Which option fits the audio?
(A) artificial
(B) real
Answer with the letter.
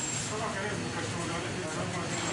B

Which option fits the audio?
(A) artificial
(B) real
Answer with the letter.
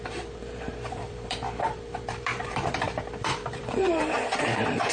A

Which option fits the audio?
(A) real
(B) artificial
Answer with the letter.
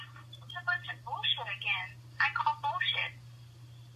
A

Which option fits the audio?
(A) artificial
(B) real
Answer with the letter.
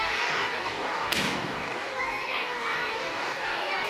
A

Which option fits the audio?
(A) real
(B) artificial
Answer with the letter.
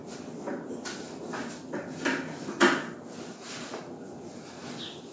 A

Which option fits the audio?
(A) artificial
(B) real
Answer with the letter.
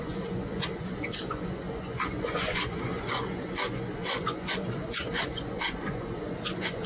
A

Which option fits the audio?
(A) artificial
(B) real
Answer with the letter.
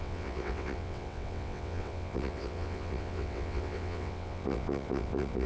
A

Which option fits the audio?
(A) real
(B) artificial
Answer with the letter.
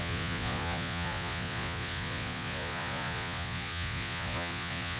B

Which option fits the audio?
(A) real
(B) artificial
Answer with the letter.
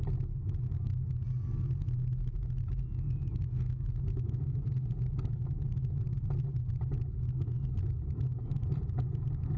A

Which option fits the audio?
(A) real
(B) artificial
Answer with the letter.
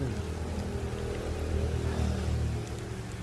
A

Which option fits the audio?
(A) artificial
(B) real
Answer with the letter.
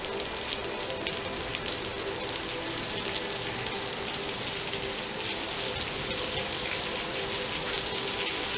B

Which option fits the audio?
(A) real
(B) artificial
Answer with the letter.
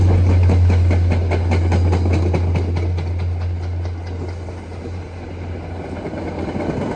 A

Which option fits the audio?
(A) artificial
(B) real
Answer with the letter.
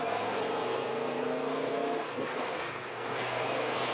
A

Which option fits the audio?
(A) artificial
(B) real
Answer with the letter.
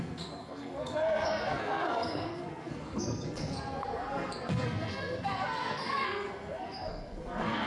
A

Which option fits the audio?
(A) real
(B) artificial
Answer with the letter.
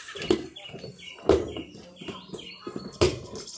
A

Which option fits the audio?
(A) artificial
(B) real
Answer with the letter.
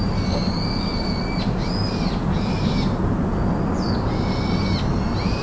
B